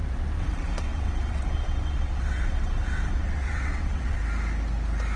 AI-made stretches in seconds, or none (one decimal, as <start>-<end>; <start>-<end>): 0.0-4.2